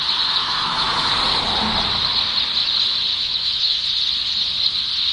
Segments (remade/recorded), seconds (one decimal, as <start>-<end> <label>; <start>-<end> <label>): 0.0-0.4 recorded; 0.4-1.1 remade; 1.1-3.1 recorded; 3.1-3.8 remade; 3.8-5.1 recorded